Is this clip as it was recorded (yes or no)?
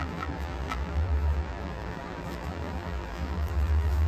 no